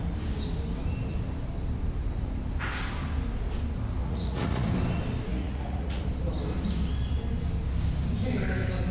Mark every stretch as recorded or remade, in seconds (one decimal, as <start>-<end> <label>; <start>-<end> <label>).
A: 0.0-4.0 recorded; 4.0-4.7 remade; 4.7-5.3 recorded; 5.3-6.0 remade; 6.0-8.9 recorded